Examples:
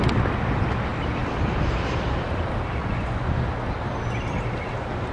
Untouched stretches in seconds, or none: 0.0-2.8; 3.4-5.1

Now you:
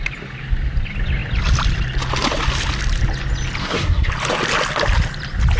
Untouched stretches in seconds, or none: 0.0-3.6; 4.1-5.6

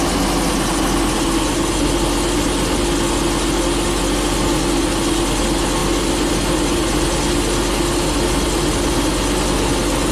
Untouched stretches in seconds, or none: 0.0-10.1

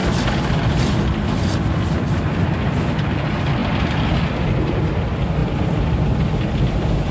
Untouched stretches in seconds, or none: 0.0-7.1

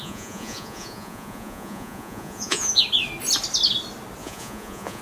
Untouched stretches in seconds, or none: 2.8-4.2

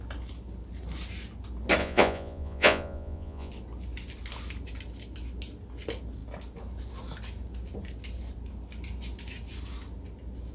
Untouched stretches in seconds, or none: 0.0-1.8; 3.5-10.5

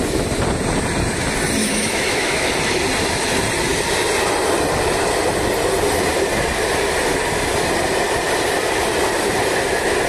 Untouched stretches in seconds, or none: 0.0-1.6; 2.5-10.1

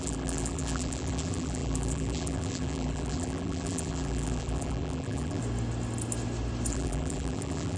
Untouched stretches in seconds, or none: 5.4-6.7